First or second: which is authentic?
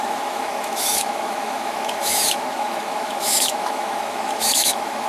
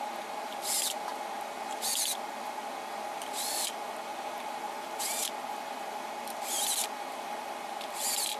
second